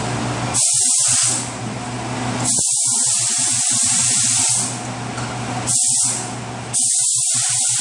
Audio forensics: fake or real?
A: real